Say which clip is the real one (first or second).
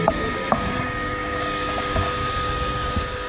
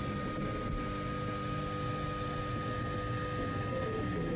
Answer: second